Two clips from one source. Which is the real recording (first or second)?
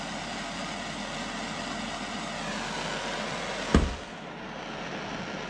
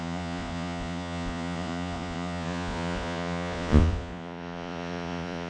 first